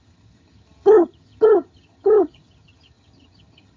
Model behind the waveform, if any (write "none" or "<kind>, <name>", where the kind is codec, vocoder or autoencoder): vocoder, HiFi-GAN